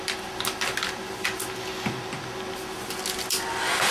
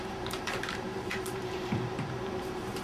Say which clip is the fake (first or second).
second